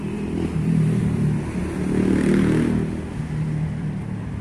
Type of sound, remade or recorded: recorded